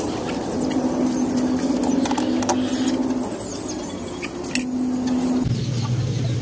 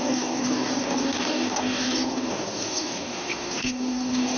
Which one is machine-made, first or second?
second